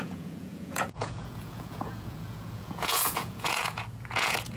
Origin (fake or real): fake